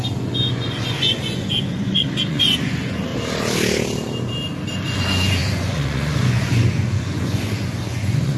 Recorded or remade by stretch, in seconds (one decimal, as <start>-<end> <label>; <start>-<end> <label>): 0.0-3.1 remade; 3.1-4.7 recorded; 4.7-8.4 remade